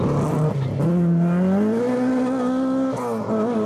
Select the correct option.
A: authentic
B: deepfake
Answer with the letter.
A